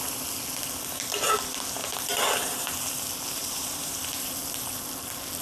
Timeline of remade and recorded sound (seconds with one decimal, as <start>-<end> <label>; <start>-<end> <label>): 0.0-1.8 recorded; 1.8-2.8 remade; 2.8-3.4 recorded; 3.4-4.0 remade; 4.0-5.4 recorded